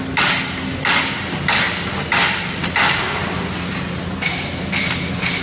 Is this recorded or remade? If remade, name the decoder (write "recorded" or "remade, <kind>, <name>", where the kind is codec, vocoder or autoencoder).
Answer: recorded